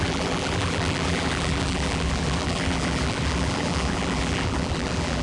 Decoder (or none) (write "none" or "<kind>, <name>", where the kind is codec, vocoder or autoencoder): vocoder, BigVGAN v2